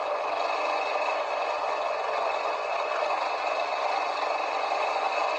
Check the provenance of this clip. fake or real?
fake